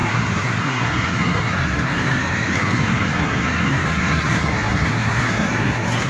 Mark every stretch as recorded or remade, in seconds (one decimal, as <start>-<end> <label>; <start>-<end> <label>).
0.0-6.1 remade